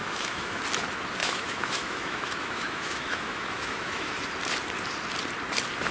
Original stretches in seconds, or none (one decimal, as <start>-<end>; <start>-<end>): 0.6-1.2; 4.2-5.9